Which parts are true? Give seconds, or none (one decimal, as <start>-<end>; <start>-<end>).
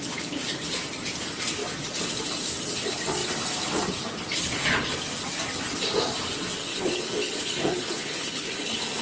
0.0-6.7